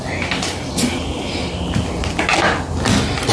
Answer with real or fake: real